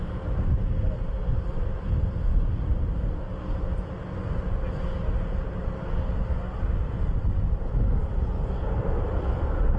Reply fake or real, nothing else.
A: real